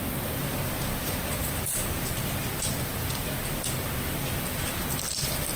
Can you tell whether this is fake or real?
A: real